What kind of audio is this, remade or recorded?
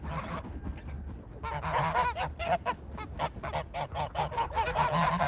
recorded